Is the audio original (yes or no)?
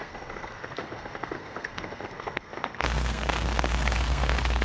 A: no